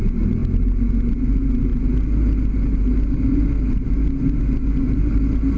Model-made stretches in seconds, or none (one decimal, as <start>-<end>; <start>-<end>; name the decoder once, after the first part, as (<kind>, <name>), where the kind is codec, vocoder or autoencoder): none